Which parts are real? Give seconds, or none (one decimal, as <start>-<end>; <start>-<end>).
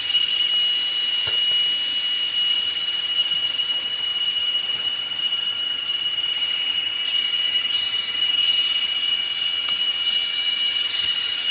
0.5-2.5